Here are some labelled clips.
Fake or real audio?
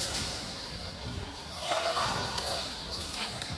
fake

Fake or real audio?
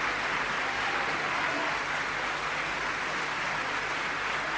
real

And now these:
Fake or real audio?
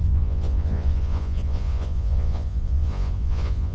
fake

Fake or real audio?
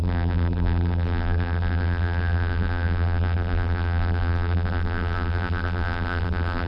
fake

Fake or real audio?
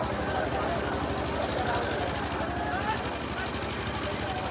real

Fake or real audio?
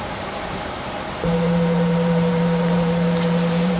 fake